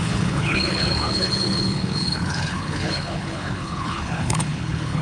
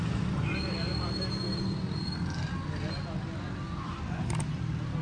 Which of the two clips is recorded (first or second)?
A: second